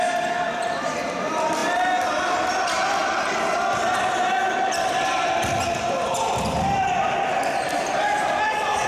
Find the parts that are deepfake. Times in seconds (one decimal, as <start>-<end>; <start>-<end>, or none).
none